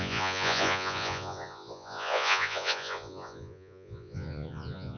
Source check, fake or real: fake